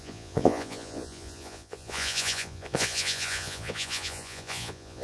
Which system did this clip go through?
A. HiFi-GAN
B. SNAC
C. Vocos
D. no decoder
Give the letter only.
C